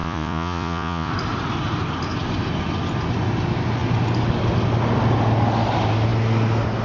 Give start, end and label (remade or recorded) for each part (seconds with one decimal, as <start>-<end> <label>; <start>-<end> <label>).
0.0-1.1 remade; 1.1-6.8 recorded